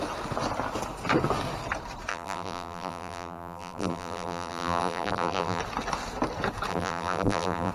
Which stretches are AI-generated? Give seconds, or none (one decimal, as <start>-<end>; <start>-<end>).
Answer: 2.1-5.6; 6.7-7.7